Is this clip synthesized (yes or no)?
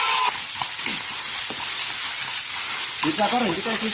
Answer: no